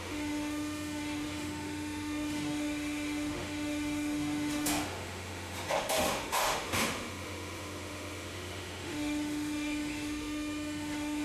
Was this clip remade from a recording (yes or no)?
yes